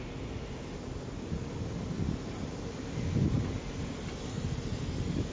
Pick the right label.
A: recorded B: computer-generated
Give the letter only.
A